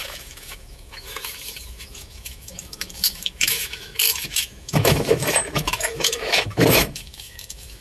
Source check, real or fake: fake